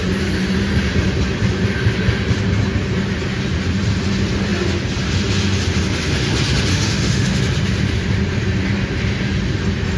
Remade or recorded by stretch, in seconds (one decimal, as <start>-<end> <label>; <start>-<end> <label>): 0.0-6.7 recorded; 6.7-7.4 remade; 7.4-10.0 recorded